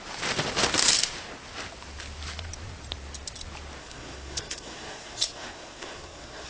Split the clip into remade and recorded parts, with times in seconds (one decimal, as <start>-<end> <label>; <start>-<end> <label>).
0.0-3.8 recorded; 3.8-6.5 remade